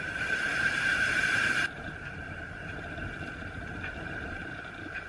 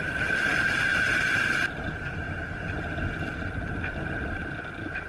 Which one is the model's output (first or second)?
first